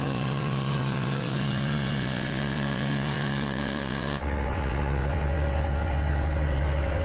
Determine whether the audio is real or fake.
fake